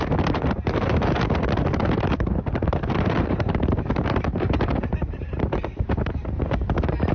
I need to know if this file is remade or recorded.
remade